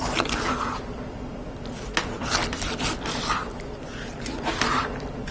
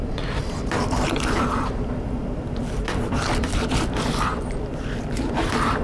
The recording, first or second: first